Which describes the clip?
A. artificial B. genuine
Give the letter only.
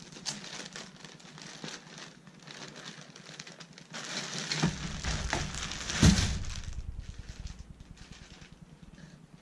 B